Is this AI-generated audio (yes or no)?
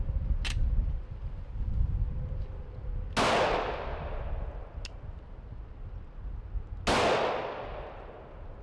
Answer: no